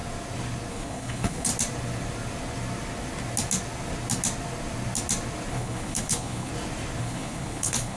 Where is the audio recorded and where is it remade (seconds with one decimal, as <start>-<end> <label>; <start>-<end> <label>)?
0.0-0.7 recorded; 0.7-1.5 remade; 1.5-5.5 recorded; 5.5-6.5 remade; 6.5-7.0 recorded; 7.0-8.0 remade